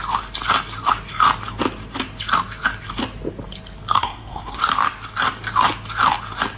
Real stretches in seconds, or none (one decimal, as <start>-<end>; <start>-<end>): 0.0-4.0; 4.6-6.6